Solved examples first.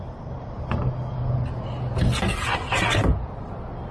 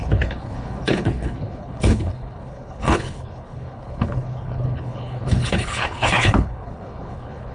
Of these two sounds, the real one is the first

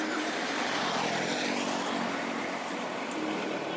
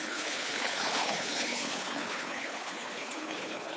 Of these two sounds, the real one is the first